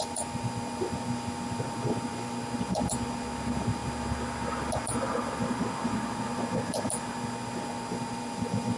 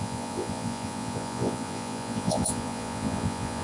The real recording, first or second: first